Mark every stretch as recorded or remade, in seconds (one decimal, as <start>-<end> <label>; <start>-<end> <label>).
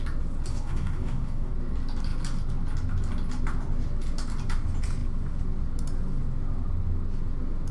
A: 0.0-0.5 recorded; 0.5-1.5 remade; 1.5-7.7 recorded